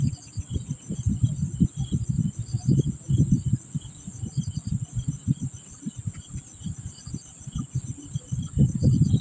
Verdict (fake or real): real